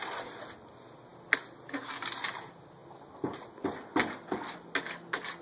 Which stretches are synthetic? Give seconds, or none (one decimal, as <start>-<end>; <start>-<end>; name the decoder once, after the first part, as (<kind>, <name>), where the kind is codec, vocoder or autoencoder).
none